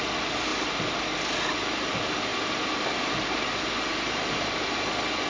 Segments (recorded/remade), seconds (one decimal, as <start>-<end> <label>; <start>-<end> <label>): 0.0-5.3 recorded